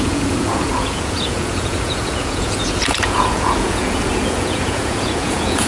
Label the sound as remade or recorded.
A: remade